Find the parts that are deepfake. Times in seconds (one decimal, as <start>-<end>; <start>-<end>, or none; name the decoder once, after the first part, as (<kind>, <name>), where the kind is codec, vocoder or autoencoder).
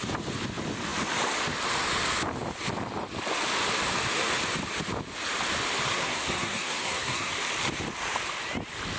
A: 5.9-7.3 (codec, SNAC)